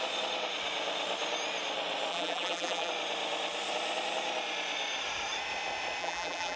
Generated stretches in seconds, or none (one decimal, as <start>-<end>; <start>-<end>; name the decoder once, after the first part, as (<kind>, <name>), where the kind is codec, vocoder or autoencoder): 2.1-2.9 (vocoder, BigVGAN v2); 6.0-6.6

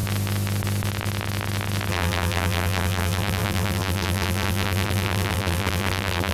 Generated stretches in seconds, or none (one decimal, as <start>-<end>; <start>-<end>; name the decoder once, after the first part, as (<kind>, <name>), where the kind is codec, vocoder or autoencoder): 1.9-6.3 (vocoder, BigVGAN v2)